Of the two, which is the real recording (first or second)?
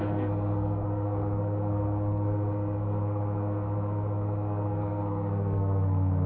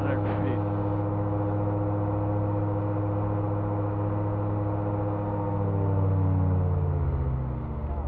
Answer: second